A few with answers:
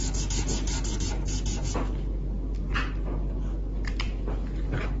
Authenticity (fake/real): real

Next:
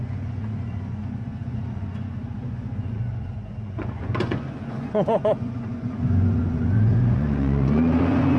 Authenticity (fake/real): fake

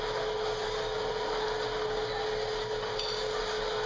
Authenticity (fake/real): real